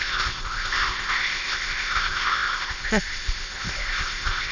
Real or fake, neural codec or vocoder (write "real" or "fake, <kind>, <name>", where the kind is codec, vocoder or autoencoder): fake, codec, ZipCodec